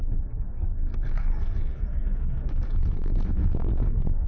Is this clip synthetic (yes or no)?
yes